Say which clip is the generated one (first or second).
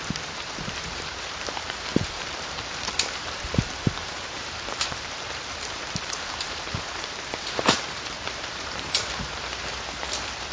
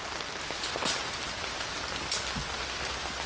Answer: first